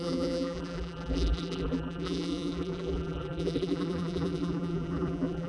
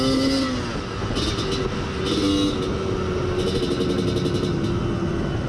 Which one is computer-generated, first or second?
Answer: first